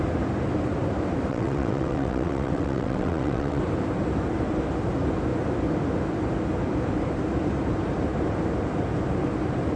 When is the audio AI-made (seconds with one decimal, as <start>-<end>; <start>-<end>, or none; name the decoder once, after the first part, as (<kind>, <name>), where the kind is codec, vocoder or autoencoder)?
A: 1.3-3.6 (vocoder, WaveNeXt)